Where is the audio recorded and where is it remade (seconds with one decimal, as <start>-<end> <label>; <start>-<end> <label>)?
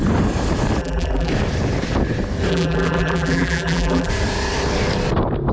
0.0-0.8 recorded; 0.8-1.3 remade; 1.3-2.5 recorded; 2.5-4.1 remade; 4.1-5.5 recorded